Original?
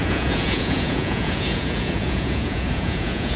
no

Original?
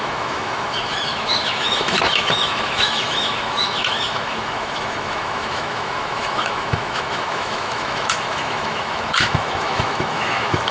no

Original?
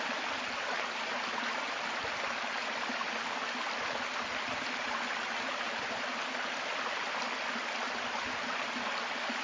yes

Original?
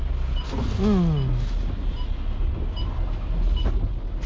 yes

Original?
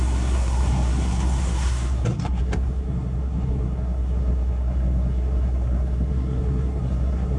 no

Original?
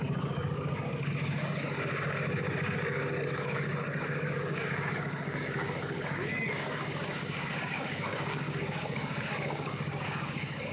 no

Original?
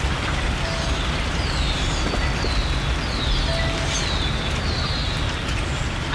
yes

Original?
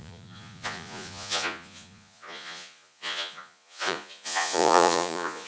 no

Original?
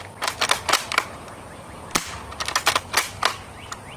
yes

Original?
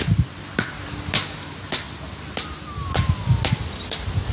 yes